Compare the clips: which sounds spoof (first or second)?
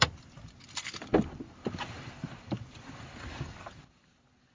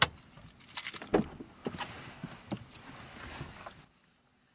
first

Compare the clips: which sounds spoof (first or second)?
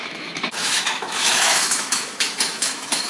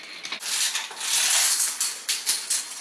first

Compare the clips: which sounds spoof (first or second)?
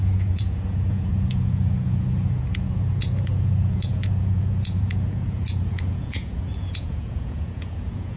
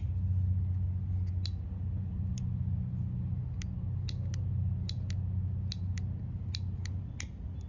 first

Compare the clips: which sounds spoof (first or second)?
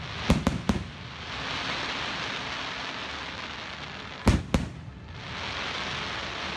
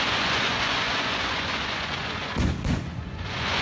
second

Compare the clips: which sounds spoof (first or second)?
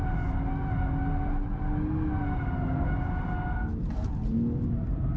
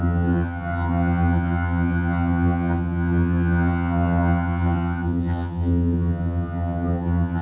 second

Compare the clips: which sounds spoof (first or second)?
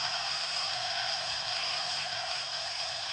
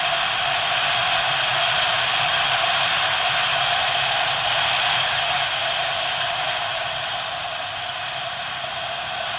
first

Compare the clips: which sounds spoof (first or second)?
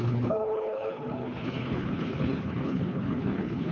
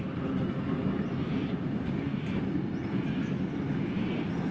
first